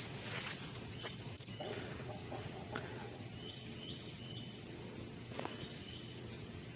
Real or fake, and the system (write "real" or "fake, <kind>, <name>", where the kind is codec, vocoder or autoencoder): fake, vocoder, WaveNeXt